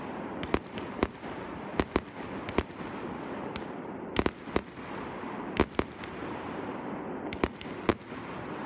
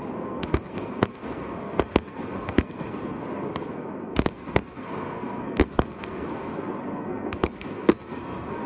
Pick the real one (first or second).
first